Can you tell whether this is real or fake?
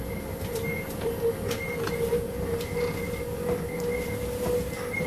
real